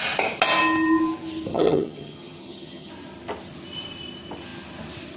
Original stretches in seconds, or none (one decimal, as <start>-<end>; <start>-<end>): 0.0-1.5; 2.9-5.2